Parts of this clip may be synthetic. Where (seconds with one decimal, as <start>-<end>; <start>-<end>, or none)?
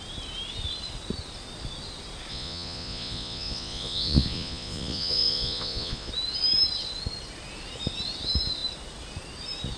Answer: 2.3-6.1